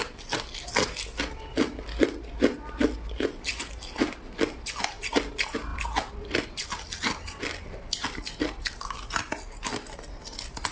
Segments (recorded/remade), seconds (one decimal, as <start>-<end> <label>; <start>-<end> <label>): 0.0-10.7 recorded